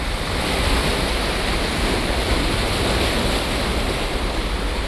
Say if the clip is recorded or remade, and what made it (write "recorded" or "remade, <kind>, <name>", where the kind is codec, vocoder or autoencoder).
recorded